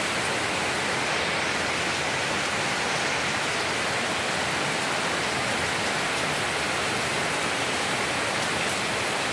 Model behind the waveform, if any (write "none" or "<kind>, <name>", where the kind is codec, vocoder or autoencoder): none